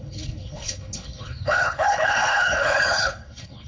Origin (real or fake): fake